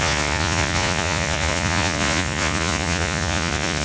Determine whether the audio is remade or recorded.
remade